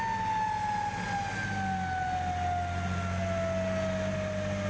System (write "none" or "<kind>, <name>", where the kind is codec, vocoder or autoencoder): none